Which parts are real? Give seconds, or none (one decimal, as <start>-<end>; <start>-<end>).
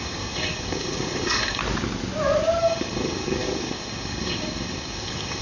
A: 1.6-2.6